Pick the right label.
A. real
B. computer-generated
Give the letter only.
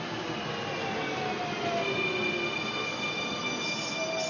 A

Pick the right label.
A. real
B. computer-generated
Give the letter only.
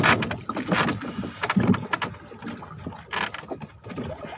A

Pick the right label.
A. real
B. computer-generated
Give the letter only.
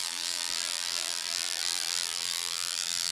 B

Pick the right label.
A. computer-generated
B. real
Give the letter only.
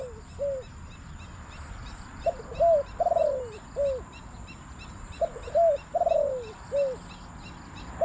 B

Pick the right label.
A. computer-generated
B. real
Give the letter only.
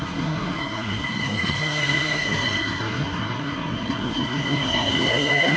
A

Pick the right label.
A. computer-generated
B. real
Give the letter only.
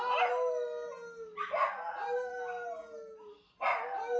B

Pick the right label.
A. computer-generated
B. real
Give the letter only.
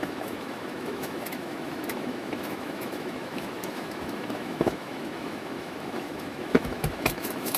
A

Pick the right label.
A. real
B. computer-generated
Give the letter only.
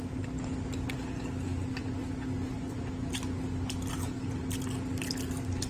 A